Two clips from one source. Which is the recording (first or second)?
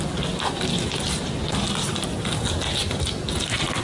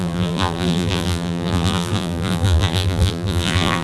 first